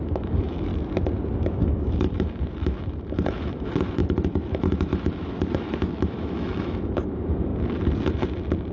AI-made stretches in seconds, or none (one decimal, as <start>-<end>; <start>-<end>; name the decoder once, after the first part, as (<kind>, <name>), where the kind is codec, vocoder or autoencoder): 0.0-0.7 (autoencoder, DAC-VAE); 1.3-7.5